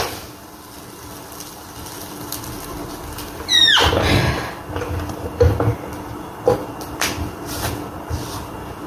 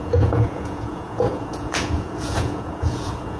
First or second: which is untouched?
first